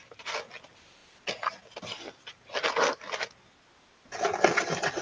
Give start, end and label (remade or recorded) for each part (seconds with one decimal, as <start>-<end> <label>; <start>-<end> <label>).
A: 0.0-5.0 recorded